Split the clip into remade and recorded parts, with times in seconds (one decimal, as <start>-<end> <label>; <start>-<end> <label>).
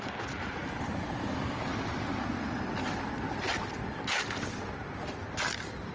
0.0-5.9 recorded